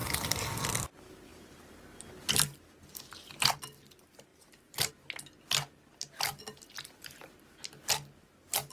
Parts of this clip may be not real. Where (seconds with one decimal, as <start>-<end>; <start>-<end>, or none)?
4.3-4.9